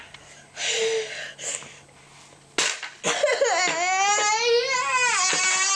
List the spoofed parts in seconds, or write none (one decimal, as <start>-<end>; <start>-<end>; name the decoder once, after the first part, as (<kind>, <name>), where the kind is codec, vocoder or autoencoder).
none